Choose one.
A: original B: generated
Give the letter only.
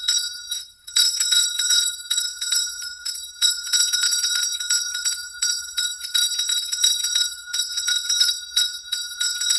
B